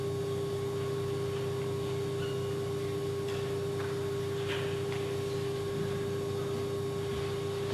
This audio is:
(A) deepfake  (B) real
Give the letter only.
B